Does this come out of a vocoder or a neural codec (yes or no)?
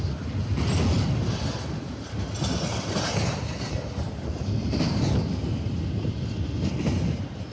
no